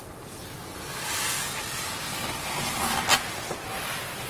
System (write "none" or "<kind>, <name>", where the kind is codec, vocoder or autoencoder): none